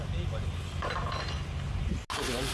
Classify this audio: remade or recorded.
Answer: recorded